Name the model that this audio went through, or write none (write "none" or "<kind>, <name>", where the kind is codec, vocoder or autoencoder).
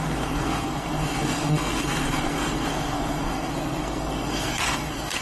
codec, SNAC